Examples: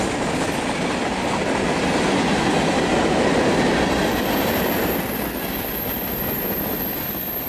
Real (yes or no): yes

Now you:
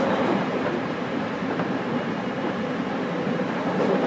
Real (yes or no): no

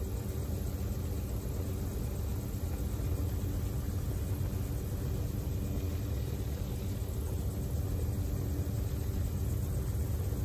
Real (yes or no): yes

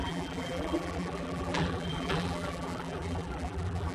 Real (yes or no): no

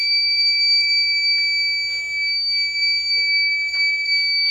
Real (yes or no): yes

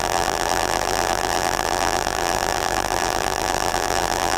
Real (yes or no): no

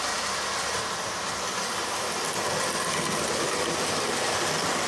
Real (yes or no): yes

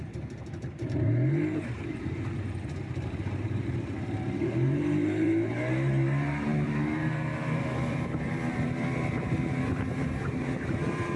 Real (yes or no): no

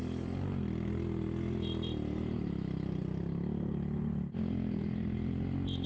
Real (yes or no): yes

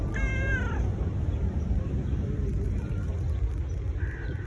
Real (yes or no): yes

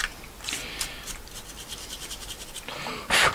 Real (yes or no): yes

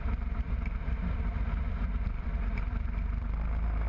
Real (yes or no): no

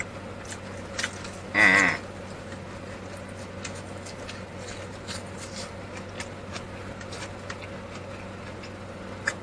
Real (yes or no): yes